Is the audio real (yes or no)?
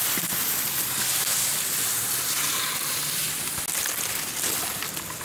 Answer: yes